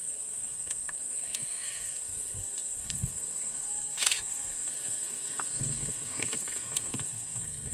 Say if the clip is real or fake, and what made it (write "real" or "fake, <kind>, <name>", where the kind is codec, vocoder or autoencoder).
fake, codec, SNAC